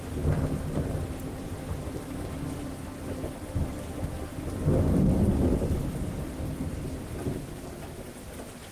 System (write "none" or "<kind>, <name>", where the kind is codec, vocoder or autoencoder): none